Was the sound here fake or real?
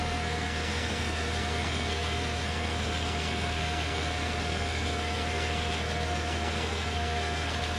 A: fake